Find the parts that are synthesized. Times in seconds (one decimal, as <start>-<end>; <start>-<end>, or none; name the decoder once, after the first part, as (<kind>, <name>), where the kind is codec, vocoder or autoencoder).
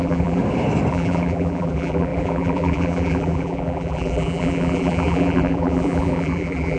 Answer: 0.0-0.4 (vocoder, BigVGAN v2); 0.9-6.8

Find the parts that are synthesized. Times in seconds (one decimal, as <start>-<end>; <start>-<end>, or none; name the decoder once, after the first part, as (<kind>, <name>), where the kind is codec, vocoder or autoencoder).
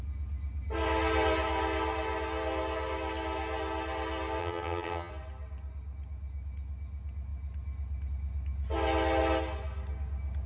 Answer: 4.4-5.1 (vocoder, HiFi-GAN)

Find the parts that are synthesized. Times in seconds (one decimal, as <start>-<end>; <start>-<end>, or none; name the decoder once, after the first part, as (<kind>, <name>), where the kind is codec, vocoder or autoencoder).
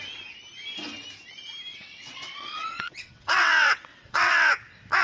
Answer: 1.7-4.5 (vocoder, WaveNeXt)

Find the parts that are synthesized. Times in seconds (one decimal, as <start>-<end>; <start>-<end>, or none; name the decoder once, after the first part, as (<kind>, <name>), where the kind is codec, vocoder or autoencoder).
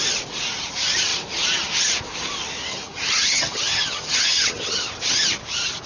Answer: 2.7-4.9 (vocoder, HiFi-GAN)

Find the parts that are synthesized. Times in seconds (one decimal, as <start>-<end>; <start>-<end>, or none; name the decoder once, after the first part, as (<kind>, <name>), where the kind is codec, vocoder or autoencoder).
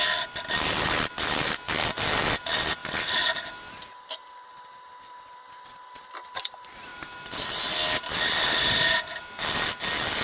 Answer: none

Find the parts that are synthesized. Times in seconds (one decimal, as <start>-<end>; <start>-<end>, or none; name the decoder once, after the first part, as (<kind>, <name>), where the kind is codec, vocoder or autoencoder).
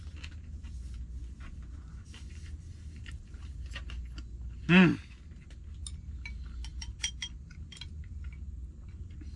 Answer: 2.0-2.7 (vocoder, BigVGAN v2); 6.7-9.4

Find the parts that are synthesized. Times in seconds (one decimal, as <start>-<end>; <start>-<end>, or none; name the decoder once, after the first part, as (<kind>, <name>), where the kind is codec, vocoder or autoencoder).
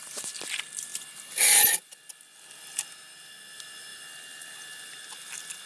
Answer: none